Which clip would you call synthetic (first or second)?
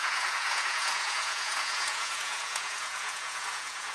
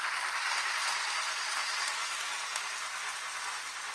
first